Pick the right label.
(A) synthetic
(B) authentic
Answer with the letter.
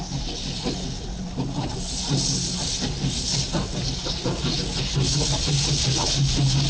B